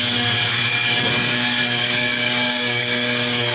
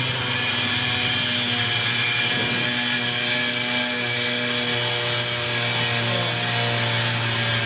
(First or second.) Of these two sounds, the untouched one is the second